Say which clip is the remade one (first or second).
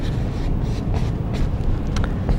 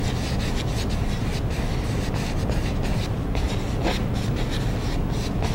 first